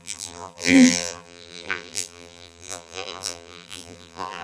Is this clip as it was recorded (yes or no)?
no